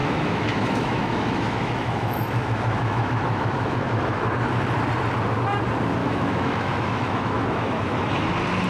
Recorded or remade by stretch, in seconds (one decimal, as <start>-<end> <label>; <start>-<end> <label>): 0.0-4.3 remade; 4.3-6.0 recorded; 6.0-8.1 remade; 8.1-8.7 recorded